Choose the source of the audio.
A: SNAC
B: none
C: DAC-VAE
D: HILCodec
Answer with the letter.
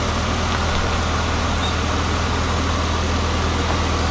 B